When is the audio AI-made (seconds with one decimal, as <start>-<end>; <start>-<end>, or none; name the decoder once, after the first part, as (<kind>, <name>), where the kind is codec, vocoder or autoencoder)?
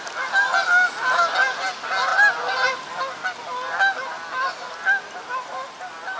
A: none